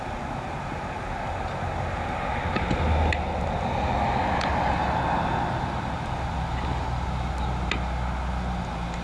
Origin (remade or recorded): recorded